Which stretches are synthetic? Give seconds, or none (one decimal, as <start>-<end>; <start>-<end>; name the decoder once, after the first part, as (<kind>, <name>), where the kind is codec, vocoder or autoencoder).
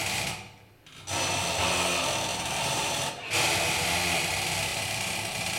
2.3-3.1 (vocoder, BigVGAN v2); 4.7-5.6